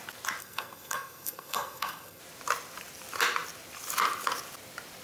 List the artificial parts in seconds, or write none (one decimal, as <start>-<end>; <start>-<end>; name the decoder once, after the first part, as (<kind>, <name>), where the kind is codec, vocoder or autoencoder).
0.4-2.2 (codec, SNAC)